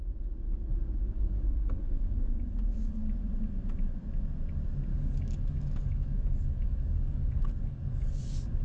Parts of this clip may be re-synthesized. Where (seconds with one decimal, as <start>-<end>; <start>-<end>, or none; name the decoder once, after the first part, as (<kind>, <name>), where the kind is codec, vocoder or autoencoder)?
0.7-3.2 (codec, DAC); 4.9-8.2

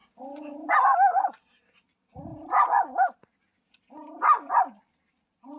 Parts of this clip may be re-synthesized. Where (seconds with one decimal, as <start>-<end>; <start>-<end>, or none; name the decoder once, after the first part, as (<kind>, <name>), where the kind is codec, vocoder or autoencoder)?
none

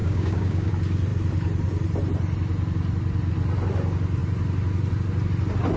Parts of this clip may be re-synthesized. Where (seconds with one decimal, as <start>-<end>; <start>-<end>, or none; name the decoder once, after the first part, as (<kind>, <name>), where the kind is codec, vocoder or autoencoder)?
0.0-0.7 (codec, DAC)